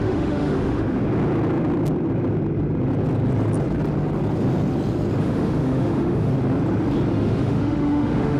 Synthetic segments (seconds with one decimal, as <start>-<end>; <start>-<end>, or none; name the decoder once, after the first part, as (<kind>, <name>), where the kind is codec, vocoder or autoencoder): 0.0-1.0 (autoencoder, DAC-VAE); 5.2-6.3; 7.1-8.4